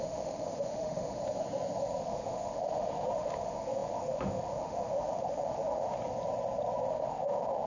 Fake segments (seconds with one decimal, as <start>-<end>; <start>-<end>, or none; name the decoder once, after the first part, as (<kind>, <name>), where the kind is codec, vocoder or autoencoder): 0.0-1.2 (autoencoder, DAC-VAE); 2.0-6.0; 6.9-7.7